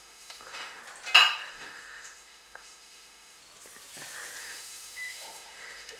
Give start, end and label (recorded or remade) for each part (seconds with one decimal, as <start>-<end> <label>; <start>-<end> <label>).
0.0-0.8 remade; 0.8-1.5 recorded; 1.5-3.4 remade; 3.4-4.4 recorded; 4.4-6.0 remade